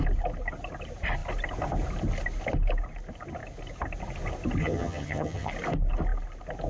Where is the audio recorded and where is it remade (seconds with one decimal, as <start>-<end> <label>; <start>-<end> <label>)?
0.0-4.6 recorded; 4.6-5.5 remade; 5.5-6.7 recorded